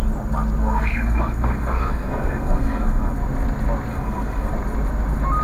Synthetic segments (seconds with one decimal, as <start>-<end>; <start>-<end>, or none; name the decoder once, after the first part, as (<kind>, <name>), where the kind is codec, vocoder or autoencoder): 0.6-3.1 (codec, SNAC); 3.9-4.5